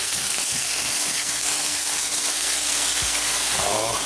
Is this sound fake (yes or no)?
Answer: yes